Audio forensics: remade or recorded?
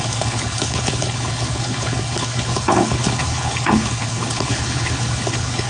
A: remade